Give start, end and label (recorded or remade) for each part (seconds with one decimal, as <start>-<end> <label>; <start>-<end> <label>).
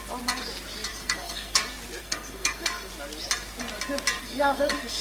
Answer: 0.0-0.9 recorded; 0.9-1.6 remade; 1.6-2.0 recorded; 2.0-2.9 remade; 2.9-4.2 recorded; 4.2-5.0 remade